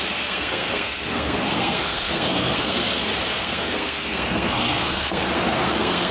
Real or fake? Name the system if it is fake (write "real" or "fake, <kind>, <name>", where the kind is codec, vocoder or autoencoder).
fake, codec, SNAC